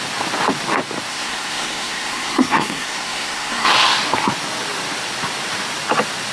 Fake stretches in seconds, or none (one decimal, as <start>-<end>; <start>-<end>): 1.1-3.7